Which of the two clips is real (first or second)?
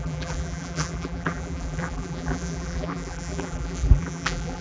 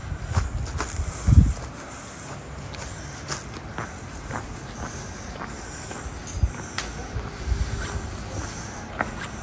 second